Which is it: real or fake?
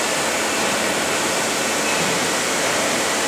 real